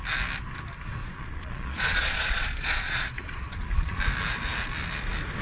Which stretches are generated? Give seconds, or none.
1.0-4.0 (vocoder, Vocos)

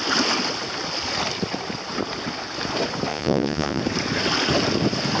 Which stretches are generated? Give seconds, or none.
3.1-3.8 (vocoder, Vocos)

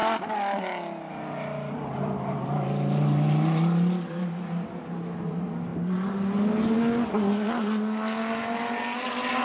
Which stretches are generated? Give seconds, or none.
none